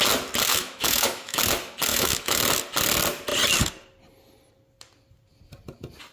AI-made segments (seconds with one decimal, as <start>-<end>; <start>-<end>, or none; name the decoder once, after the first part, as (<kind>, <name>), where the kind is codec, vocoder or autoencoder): 0.5-1.4 (autoencoder, DAC-VAE); 1.9-2.4